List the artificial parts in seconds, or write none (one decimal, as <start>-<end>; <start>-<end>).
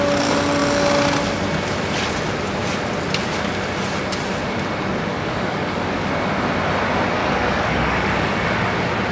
5.1-6.1; 7.2-8.7